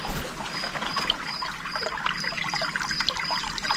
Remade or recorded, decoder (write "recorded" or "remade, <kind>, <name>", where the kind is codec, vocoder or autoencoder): recorded